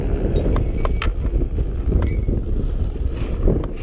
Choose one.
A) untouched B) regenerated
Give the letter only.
A